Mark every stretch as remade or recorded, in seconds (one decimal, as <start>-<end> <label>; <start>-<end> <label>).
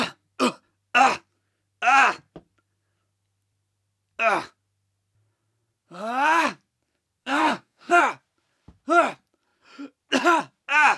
0.0-7.2 recorded; 7.2-8.0 remade; 8.0-11.0 recorded